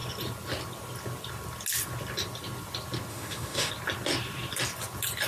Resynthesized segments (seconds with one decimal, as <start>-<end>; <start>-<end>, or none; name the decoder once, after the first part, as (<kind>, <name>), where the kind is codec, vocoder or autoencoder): 3.1-3.7 (autoencoder, DAC-VAE)